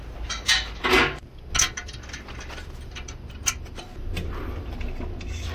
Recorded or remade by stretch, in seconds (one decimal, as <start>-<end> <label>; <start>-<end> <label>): 0.0-5.5 recorded